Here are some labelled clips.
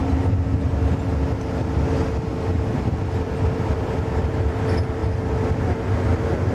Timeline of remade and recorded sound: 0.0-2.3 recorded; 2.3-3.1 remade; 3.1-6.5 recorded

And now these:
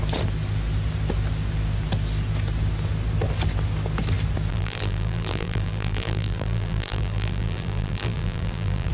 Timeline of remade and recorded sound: 0.0-4.5 recorded; 4.5-8.9 remade

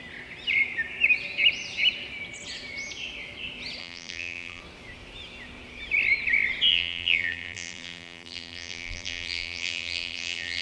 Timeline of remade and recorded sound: 0.0-3.8 recorded; 3.8-4.6 remade; 4.6-6.7 recorded; 6.7-10.6 remade

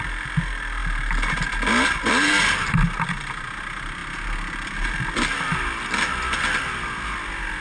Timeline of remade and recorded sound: 0.0-7.6 recorded

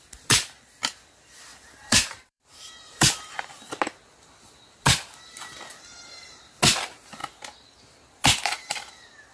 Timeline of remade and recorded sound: 0.0-1.5 recorded; 1.5-3.5 remade; 3.5-9.3 recorded

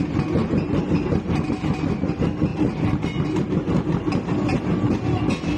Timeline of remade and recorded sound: 0.0-0.4 recorded; 0.4-1.9 remade; 1.9-2.5 recorded; 2.5-3.4 remade; 3.4-5.6 recorded

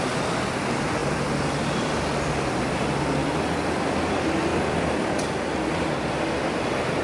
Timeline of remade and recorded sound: 0.0-4.5 recorded; 4.5-5.2 remade; 5.2-7.0 recorded